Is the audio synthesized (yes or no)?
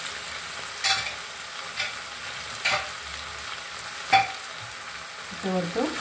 no